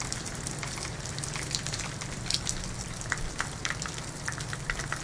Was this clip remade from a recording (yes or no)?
no